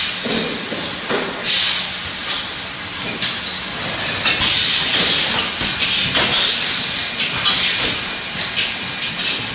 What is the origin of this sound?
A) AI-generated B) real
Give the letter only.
B